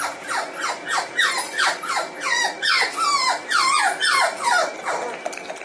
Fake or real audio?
real